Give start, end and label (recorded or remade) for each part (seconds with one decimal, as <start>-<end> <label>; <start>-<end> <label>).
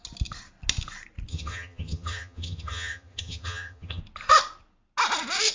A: 0.0-1.3 recorded; 1.3-4.0 remade; 4.0-5.5 recorded